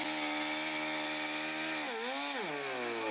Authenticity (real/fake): real